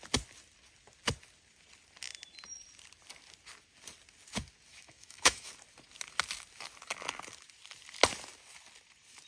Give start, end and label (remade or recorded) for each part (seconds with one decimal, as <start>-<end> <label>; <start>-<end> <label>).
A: 0.0-4.7 recorded; 4.7-5.5 remade; 5.5-9.3 recorded